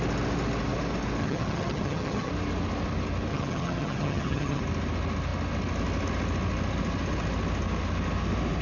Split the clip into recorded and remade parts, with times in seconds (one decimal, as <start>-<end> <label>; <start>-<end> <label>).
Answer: 0.0-1.2 recorded; 1.2-2.3 remade; 2.3-3.3 recorded; 3.3-4.6 remade; 4.6-8.6 recorded